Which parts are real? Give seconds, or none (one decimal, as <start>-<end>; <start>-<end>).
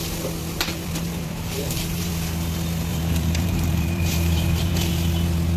0.0-0.4; 2.1-2.9; 4.9-5.6